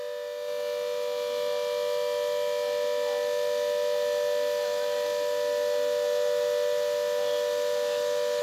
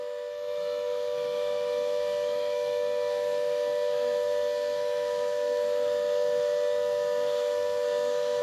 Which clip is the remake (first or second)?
second